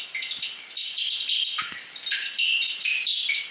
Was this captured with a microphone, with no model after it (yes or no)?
yes